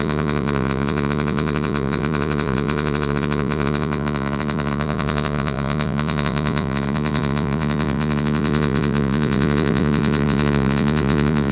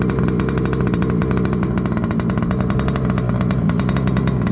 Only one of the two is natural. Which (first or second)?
second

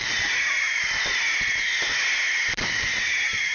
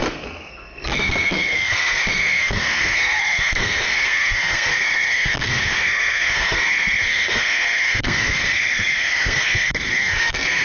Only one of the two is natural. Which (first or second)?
first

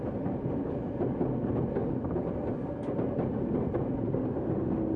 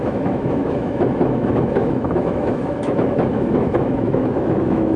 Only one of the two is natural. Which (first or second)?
first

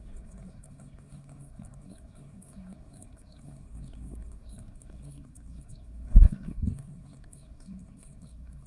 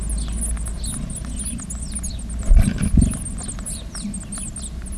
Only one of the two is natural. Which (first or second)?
second